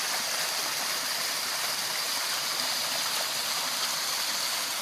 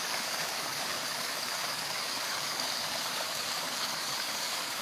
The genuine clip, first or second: first